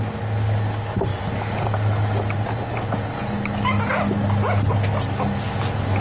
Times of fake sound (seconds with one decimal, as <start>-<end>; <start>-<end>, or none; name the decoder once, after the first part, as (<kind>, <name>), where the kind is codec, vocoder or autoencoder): none